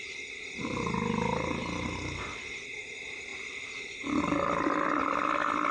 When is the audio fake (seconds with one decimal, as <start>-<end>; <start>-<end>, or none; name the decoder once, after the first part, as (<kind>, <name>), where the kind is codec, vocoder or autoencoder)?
none